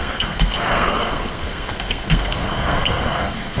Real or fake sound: fake